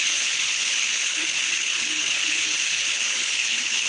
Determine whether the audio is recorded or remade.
remade